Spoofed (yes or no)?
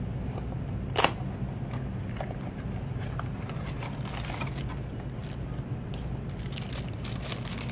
no